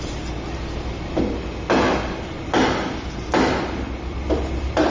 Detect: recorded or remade recorded